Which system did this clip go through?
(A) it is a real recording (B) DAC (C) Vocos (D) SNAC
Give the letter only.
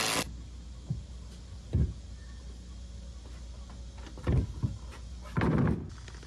A